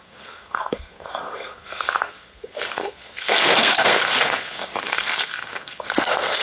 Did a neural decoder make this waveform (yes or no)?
yes